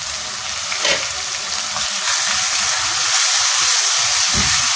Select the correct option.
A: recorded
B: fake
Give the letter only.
A